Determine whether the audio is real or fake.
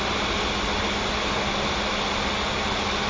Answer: real